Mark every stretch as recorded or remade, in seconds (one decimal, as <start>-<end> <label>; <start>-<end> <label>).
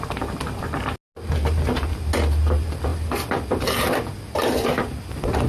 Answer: 0.0-5.5 recorded